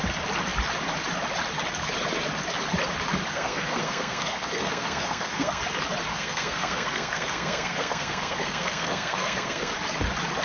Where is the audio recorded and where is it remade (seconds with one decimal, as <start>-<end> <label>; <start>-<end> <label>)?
0.0-3.3 recorded; 3.3-5.6 remade; 5.6-6.1 recorded; 6.1-9.7 remade; 9.7-10.4 recorded